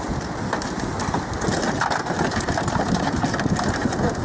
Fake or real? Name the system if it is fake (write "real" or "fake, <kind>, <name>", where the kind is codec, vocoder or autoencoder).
real